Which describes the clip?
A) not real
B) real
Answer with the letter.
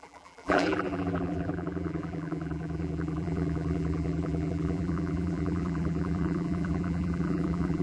A